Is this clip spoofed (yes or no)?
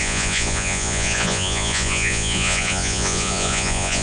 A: yes